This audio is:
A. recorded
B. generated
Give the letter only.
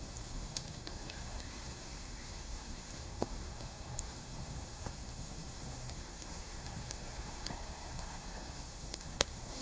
B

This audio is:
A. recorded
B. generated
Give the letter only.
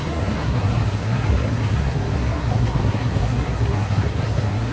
B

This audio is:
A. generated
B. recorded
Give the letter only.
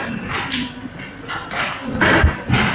B